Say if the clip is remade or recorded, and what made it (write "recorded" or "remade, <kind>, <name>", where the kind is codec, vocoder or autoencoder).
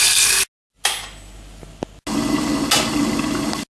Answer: recorded